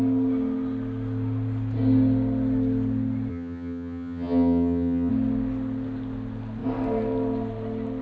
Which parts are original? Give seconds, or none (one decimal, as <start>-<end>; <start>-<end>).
0.0-3.3; 5.1-8.0